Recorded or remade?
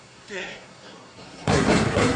remade